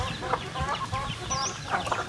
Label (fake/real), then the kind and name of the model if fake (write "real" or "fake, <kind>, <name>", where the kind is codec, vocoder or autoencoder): fake, vocoder, BigVGAN v2